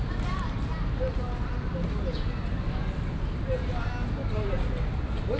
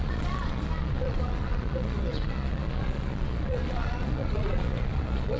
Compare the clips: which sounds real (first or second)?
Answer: first